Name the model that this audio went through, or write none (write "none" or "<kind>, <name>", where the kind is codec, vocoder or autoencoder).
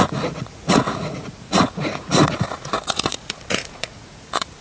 vocoder, Vocos